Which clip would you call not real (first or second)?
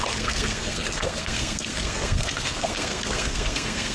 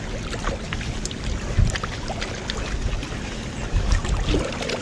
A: first